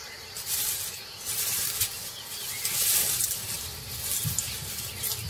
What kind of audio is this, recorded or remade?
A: recorded